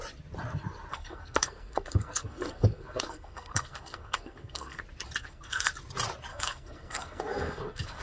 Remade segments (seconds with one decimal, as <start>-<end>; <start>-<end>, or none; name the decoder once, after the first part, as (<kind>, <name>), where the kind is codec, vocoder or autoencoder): 0.9-4.8 (codec, SNAC); 5.2-5.7; 6.3-8.0

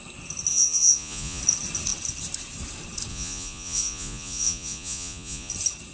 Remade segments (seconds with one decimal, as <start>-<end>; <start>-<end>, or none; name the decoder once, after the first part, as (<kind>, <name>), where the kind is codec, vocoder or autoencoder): 0.5-1.4 (vocoder, Vocos); 3.1-5.5

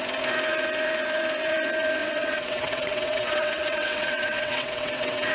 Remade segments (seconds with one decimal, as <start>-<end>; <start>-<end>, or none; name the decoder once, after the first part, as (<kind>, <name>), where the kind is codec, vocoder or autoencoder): 2.0-5.3 (vocoder, WaveNeXt)

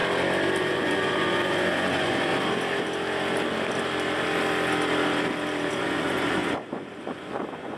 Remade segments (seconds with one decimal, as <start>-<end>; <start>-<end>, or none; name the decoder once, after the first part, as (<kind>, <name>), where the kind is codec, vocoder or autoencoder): 0.6-2.3 (vocoder, Vocos); 5.7-7.8